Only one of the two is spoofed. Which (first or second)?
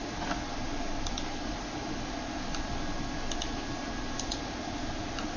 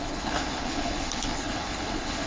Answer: second